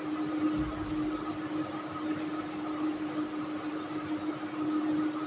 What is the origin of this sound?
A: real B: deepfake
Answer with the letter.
A